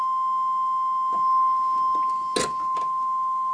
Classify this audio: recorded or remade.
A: recorded